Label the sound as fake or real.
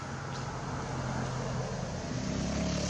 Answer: real